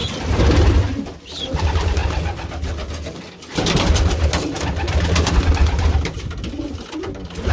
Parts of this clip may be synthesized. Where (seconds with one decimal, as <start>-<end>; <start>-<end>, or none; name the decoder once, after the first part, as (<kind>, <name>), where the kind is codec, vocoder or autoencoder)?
none